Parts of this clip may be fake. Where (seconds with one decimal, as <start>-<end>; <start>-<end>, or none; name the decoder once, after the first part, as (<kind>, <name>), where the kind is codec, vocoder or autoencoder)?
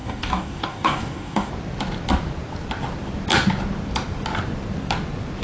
0.0-1.5 (codec, DAC)